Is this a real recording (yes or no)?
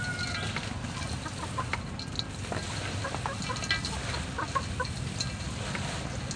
yes